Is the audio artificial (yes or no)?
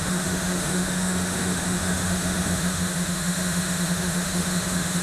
yes